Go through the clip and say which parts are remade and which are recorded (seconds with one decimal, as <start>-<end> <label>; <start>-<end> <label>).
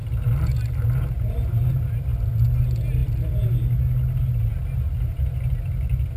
0.0-5.1 recorded; 5.1-5.7 remade; 5.7-6.2 recorded